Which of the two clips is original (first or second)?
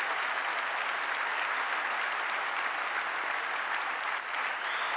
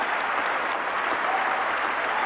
first